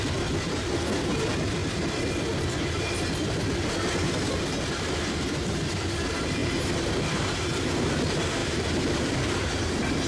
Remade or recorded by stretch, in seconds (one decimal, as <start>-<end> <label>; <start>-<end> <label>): 0.0-6.4 recorded; 6.4-7.7 remade; 7.7-8.4 recorded; 8.4-10.1 remade